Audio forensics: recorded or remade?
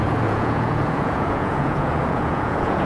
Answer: remade